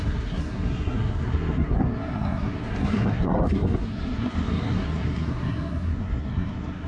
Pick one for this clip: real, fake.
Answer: fake